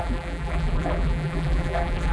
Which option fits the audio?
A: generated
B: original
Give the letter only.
A